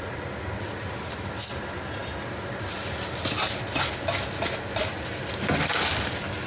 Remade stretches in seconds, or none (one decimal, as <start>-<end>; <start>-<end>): none